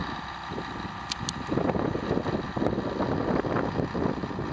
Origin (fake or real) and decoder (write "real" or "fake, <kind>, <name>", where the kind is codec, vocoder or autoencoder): real